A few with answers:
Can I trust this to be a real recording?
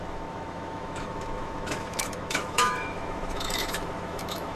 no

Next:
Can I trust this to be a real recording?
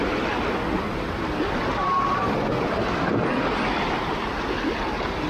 yes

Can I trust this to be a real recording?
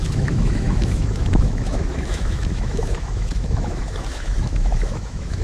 no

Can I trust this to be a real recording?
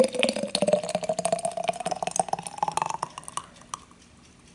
yes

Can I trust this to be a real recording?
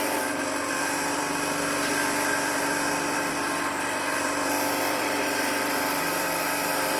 no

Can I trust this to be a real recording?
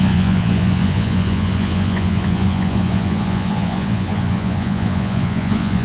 no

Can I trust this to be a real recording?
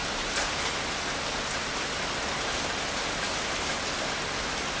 yes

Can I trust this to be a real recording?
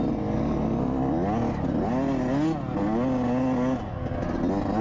yes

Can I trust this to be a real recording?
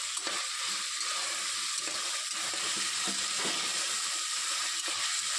yes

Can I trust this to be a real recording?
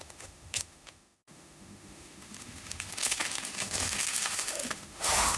no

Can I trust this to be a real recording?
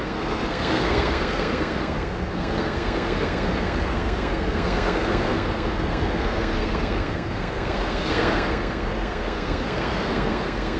no